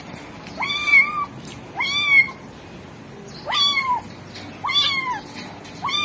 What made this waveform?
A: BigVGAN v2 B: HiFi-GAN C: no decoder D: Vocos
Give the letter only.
C